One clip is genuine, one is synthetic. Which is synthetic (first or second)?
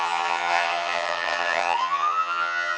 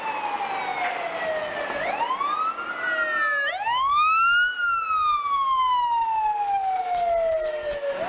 first